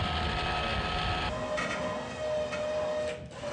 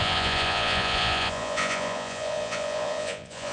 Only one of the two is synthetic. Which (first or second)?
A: second